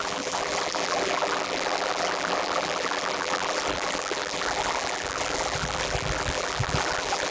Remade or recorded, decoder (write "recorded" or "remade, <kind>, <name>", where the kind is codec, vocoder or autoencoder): remade, vocoder, BigVGAN v2